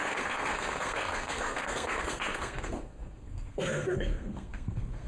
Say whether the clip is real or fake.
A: fake